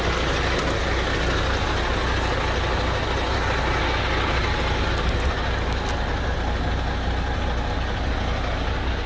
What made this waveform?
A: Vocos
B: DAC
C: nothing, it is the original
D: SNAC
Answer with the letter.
C